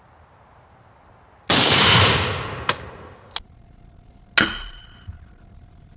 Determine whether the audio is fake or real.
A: real